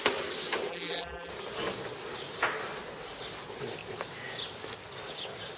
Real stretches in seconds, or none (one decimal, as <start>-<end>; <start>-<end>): 0.0-0.7; 1.3-5.6